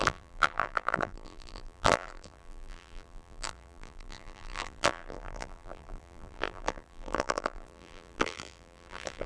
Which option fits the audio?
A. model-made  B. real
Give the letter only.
A